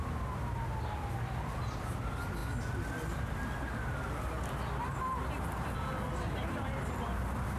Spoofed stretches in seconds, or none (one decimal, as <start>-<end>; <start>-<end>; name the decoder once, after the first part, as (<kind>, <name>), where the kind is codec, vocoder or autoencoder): none